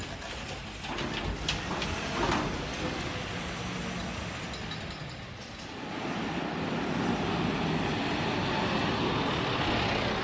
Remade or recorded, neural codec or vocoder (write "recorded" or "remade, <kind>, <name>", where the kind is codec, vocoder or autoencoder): recorded